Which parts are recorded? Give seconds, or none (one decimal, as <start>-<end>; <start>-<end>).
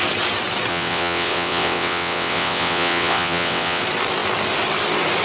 0.0-0.7; 3.8-5.2